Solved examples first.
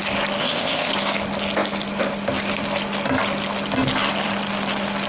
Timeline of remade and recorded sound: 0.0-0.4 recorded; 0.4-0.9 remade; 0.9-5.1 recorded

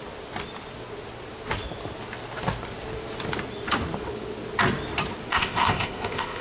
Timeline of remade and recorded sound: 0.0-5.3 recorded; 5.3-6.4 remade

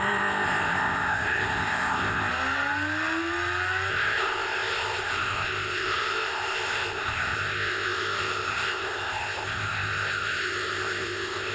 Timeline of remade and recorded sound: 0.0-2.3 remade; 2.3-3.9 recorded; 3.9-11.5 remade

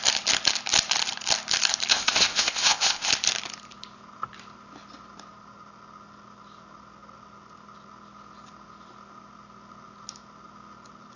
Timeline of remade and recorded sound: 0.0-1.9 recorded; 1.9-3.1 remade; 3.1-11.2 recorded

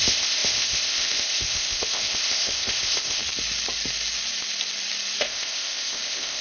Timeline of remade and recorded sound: 0.0-3.2 remade; 3.2-5.2 recorded; 5.2-6.4 remade